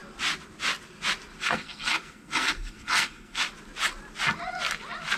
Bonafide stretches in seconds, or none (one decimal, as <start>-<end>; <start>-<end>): 0.0-1.4; 3.4-5.2

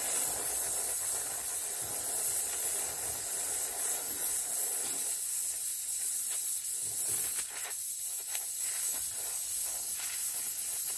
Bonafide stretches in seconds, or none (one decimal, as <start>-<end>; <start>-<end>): 0.0-11.0

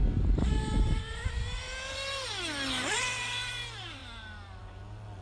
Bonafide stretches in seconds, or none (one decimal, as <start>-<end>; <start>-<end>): 0.0-5.2